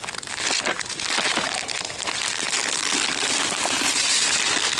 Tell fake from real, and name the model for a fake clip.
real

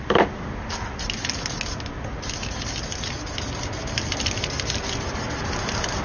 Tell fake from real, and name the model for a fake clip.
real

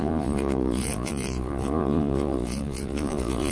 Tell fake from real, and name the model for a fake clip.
fake, vocoder, Vocos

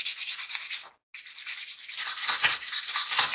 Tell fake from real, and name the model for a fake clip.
real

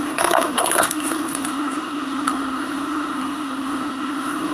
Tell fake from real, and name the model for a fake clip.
fake, codec, SNAC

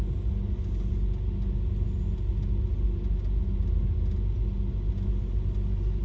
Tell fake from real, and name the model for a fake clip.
real